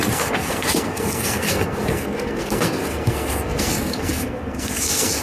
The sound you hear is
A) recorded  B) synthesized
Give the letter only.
B